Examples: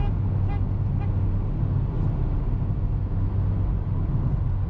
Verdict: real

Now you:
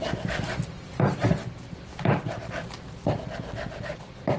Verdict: fake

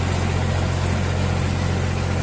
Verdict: real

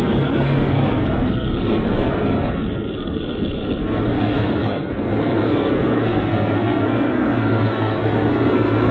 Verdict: fake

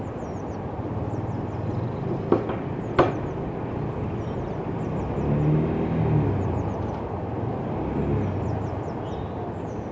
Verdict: real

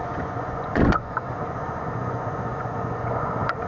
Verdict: fake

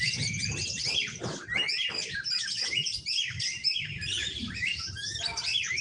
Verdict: fake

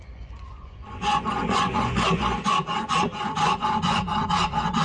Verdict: fake